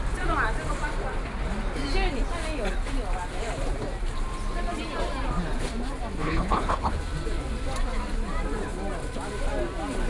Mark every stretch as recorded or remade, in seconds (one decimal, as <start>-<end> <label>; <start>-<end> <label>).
0.0-6.2 recorded; 6.2-6.9 remade; 6.9-10.1 recorded